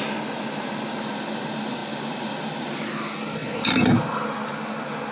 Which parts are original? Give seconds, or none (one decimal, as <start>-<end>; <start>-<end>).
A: 0.0-1.8; 2.4-5.1